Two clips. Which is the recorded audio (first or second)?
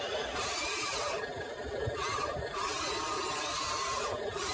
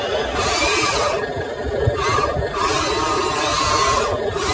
second